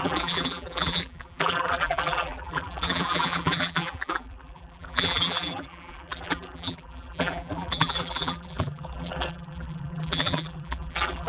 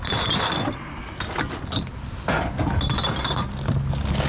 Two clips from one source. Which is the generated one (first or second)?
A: first